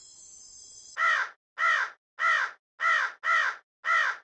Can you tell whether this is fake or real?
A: real